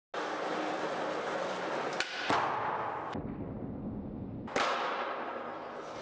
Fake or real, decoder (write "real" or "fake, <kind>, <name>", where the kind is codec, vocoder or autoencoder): real